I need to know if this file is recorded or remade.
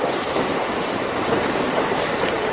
remade